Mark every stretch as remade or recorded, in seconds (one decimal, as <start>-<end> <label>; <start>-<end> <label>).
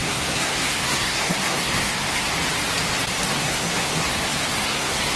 0.0-2.3 remade; 2.3-3.3 recorded; 3.3-5.2 remade